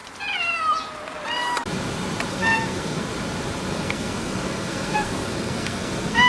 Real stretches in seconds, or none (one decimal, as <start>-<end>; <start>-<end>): 0.0-2.3; 3.1-3.7